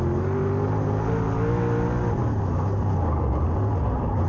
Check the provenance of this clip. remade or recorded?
recorded